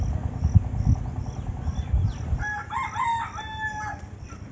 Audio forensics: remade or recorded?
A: recorded